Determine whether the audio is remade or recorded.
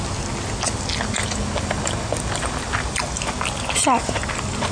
recorded